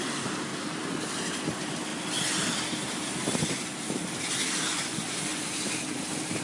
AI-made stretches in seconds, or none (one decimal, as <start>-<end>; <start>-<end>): 4.7-5.6